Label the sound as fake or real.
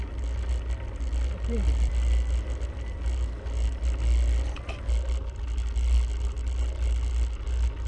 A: real